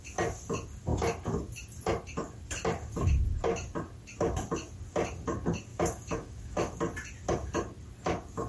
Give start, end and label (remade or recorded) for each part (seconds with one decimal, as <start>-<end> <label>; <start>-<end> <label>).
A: 0.0-5.7 recorded; 5.7-6.8 remade; 6.8-8.5 recorded